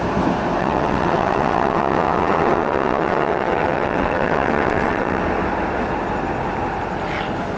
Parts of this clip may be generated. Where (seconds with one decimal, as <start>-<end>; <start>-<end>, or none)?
0.6-5.2